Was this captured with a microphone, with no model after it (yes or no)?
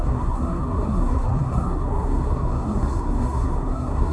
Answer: no